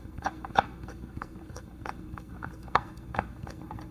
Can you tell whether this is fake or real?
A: fake